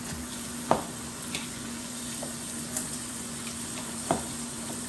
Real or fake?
fake